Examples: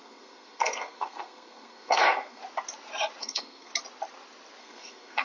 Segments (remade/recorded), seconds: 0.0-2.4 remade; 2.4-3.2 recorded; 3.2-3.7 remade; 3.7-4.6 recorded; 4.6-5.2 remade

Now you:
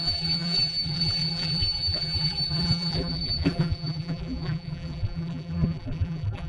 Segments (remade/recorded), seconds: 0.0-6.5 remade

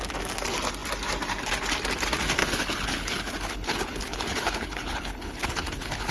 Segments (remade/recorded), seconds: 0.0-2.4 recorded; 2.4-6.1 remade

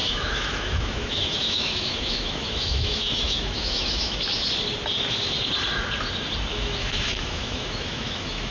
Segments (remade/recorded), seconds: 0.0-4.2 remade; 4.2-6.5 recorded; 6.5-8.5 remade

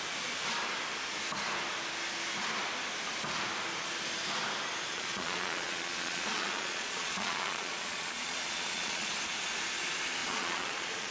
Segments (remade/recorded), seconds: 0.0-4.9 recorded; 4.9-9.1 remade; 9.1-10.2 recorded; 10.2-11.1 remade